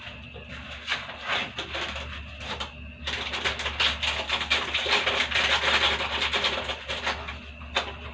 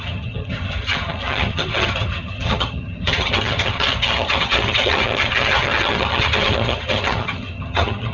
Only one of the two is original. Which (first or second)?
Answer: first